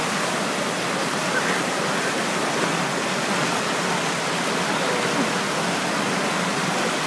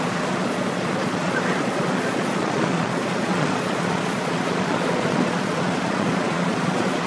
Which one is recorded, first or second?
first